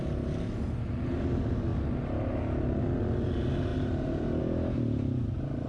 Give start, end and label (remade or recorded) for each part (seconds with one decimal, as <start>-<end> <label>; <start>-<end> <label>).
0.0-5.7 recorded